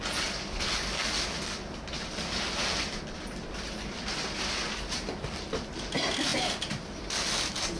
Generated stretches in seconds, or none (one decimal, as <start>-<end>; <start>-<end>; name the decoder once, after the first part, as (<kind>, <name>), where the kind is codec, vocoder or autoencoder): none